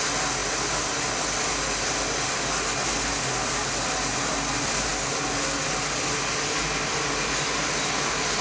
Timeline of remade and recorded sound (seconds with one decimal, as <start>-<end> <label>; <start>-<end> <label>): 0.0-8.4 recorded